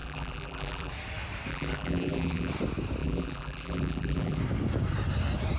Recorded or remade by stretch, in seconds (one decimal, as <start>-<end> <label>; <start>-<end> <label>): 0.0-0.9 remade; 0.9-1.5 recorded; 1.5-2.5 remade; 2.5-3.0 recorded; 3.0-4.4 remade; 4.4-5.6 recorded